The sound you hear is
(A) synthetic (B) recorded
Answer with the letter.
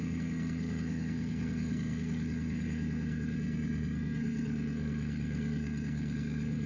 A